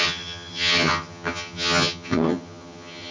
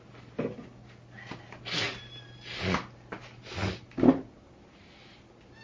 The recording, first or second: second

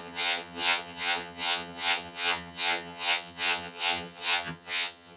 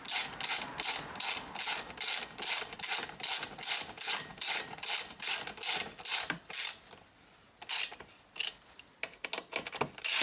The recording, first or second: second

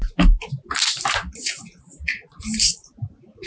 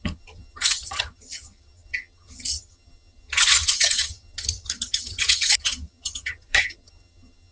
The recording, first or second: first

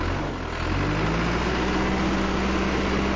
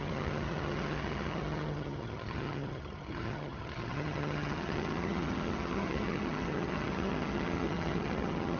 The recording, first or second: first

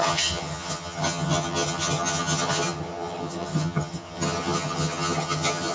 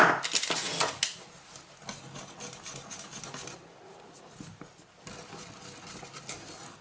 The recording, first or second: second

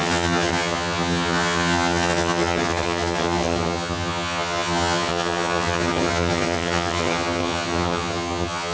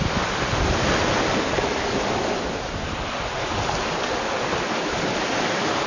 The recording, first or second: second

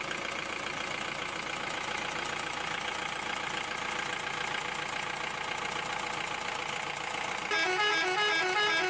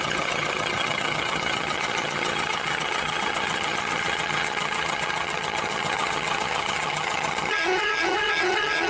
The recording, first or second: first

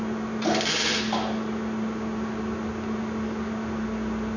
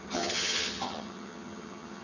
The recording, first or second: first